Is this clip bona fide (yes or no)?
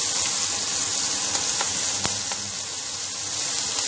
yes